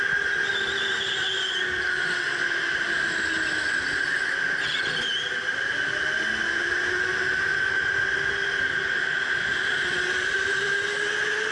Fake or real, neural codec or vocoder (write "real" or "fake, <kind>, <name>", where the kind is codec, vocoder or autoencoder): real